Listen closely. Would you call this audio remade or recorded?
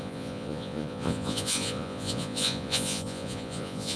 remade